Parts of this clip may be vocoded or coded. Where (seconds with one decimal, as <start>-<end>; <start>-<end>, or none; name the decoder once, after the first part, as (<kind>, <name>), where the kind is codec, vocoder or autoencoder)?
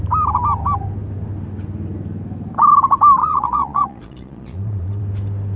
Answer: 3.2-5.0 (vocoder, Vocos)